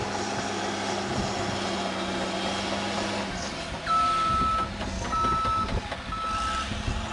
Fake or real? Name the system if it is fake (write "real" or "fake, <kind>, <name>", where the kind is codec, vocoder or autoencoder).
real